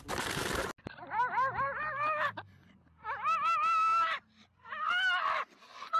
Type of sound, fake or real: real